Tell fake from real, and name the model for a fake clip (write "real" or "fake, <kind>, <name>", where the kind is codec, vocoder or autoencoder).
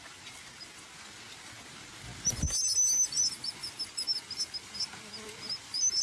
real